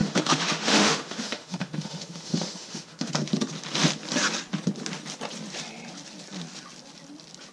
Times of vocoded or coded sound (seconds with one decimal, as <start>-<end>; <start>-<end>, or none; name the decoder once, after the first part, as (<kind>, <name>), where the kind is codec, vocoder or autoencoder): 0.0-3.1 (autoencoder, DAC-VAE)